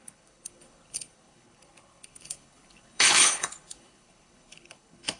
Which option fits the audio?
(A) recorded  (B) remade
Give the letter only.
B